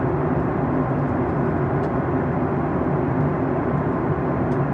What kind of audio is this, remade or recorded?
recorded